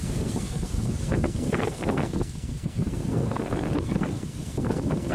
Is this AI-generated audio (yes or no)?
yes